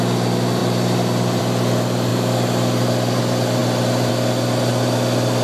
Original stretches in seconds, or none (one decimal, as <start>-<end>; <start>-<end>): 0.0-0.6; 1.4-2.1; 3.2-3.6; 4.1-5.4